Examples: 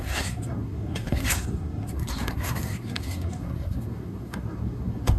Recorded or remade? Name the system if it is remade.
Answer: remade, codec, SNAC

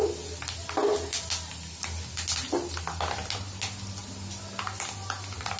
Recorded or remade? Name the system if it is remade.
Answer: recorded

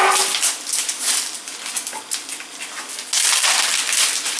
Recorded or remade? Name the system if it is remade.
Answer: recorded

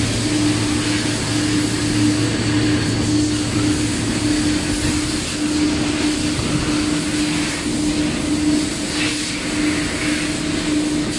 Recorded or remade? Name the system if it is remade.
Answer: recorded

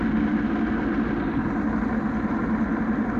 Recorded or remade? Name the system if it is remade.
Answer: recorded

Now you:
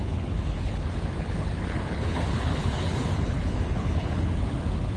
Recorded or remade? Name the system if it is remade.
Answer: remade, codec, HILCodec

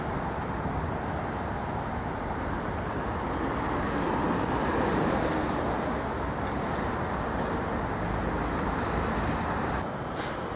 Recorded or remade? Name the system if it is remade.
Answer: recorded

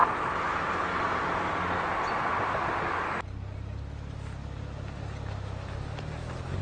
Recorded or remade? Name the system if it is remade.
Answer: recorded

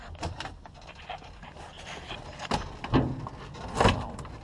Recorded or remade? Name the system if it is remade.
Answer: recorded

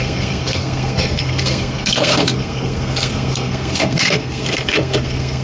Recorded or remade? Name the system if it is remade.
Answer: remade, codec, SNAC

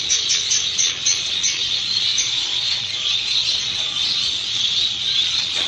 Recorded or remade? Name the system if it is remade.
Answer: remade, vocoder, Vocos